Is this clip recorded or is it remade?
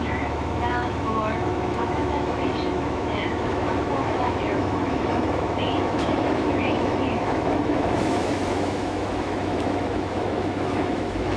remade